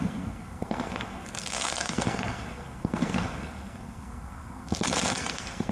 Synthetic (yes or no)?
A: yes